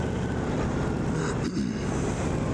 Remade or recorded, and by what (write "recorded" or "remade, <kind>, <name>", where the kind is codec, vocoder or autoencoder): recorded